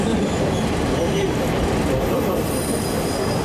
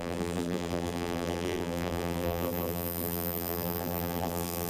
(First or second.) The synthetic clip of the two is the second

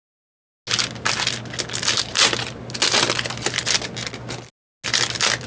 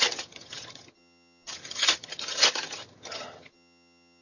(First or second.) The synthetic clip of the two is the second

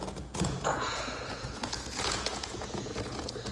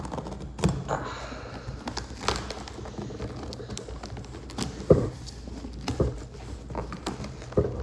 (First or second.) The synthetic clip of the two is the first